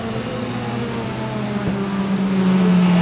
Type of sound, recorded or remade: recorded